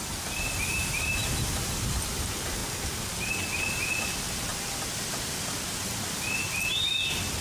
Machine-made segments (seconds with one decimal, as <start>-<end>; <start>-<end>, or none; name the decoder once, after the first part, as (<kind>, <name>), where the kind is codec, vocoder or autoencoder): none